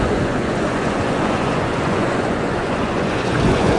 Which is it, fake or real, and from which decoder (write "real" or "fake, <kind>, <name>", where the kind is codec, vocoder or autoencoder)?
fake, vocoder, Vocos